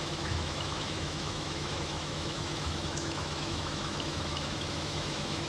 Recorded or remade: remade